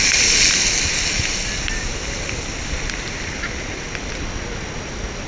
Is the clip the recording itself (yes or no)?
yes